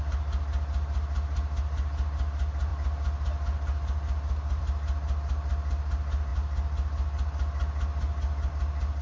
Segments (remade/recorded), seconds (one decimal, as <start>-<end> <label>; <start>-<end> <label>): 0.0-9.0 recorded